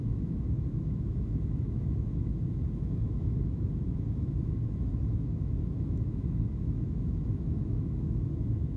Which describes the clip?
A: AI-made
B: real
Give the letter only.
A